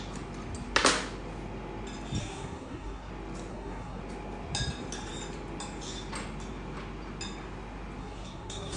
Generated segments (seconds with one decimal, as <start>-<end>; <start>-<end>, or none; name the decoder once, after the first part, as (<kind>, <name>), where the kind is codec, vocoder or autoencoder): 2.2-3.1 (codec, SNAC); 3.5-4.0; 8.0-8.8